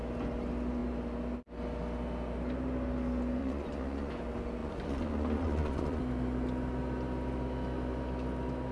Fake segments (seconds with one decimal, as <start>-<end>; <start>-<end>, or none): 3.4-4.1; 4.6-6.0